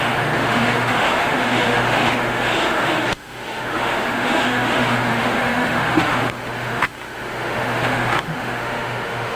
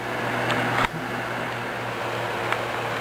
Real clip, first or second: second